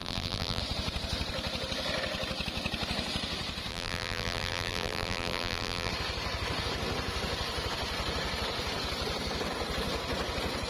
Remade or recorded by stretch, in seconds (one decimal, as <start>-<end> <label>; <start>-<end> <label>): 0.0-0.6 remade; 0.6-3.7 recorded; 3.7-5.9 remade; 5.9-10.7 recorded

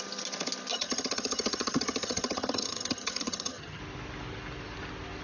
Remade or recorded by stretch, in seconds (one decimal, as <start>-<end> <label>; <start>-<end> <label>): 0.0-0.7 recorded; 0.7-3.8 remade; 3.8-5.2 recorded

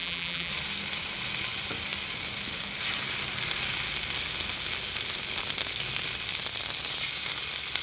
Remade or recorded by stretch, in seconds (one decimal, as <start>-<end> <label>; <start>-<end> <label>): 0.0-0.5 remade; 0.5-7.8 recorded